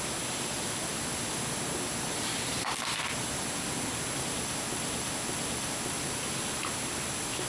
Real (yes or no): yes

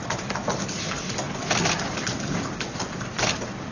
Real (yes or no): yes